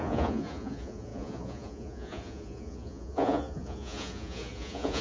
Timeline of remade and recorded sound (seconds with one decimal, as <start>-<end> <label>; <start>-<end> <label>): 0.0-5.0 remade